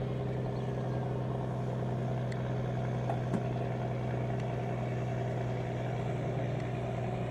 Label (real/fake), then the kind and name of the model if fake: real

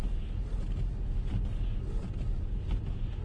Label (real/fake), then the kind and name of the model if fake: real